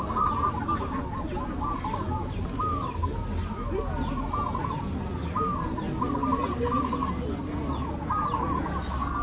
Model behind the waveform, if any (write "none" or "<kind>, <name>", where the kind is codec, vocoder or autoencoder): none